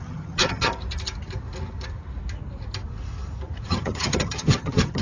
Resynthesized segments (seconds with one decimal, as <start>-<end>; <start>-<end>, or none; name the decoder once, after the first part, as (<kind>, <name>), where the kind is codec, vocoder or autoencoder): 0.0-0.7 (vocoder, HiFi-GAN); 3.7-5.0